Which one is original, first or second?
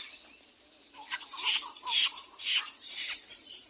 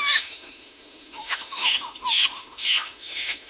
first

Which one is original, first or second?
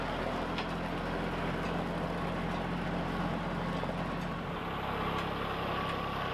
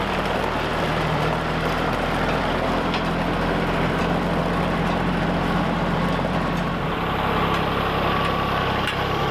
first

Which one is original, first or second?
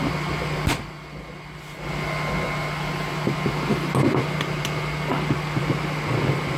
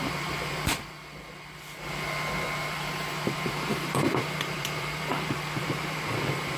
first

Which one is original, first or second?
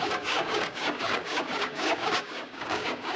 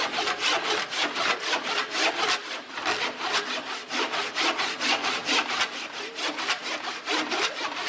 second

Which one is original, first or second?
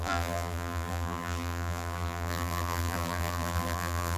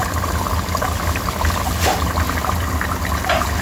second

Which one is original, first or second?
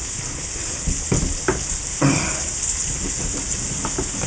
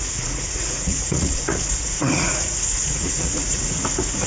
first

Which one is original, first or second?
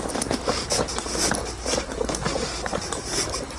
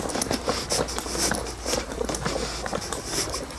second